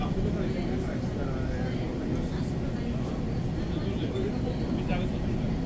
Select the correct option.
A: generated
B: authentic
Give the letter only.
B